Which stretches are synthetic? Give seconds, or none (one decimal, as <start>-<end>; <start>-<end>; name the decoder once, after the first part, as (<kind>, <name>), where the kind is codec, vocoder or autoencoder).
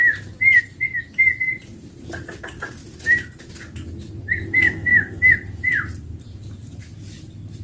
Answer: 2.8-3.5 (vocoder, BigVGAN v2); 4.9-6.8